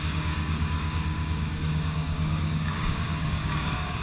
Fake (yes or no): yes